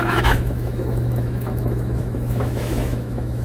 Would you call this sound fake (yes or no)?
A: yes